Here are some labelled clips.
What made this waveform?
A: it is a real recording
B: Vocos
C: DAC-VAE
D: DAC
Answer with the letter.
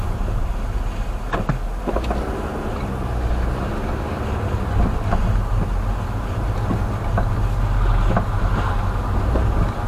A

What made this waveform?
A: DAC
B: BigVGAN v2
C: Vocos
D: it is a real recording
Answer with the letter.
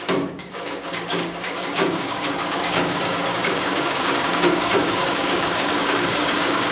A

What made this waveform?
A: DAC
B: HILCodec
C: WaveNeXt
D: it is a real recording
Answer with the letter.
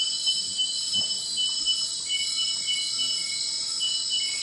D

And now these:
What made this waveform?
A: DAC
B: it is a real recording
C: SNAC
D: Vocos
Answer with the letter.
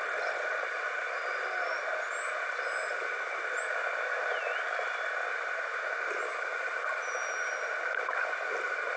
B